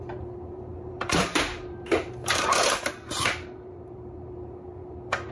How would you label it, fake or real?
fake